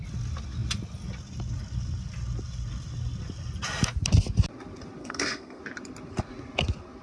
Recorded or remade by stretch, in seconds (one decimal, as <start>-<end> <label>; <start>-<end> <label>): 0.0-5.0 recorded; 5.0-5.6 remade; 5.6-7.0 recorded